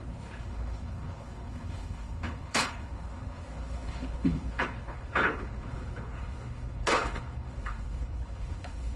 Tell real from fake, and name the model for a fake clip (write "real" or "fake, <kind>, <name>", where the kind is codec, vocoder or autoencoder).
fake, codec, HILCodec